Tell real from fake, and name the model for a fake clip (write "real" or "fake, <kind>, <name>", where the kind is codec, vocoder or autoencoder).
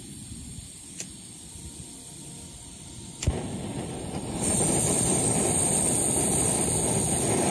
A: real